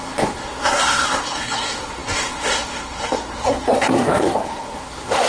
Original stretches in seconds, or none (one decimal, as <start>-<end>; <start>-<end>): none